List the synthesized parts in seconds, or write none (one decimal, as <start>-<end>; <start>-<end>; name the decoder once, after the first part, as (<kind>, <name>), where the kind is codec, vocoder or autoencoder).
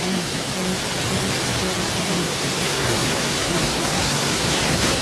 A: 0.0-0.5 (codec, SNAC); 2.0-5.0